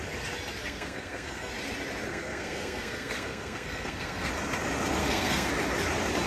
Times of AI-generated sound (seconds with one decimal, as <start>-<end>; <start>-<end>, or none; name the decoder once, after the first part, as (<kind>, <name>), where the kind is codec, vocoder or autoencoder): 0.6-1.5 (codec, SNAC); 2.1-4.3; 5.0-5.5